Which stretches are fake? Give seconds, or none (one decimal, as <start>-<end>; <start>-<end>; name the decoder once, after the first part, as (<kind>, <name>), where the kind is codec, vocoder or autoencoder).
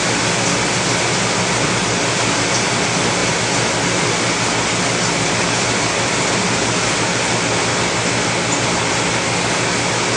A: none